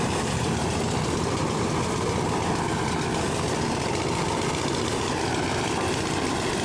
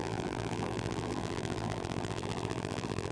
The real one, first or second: first